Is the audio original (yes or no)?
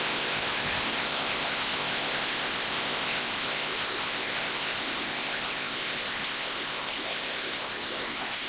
no